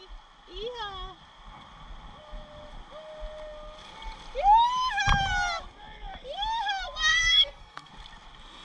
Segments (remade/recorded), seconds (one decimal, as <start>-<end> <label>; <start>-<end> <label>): 0.0-7.1 recorded; 7.1-7.9 remade; 7.9-8.6 recorded